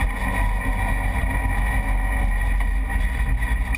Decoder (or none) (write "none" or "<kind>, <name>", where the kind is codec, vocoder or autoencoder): none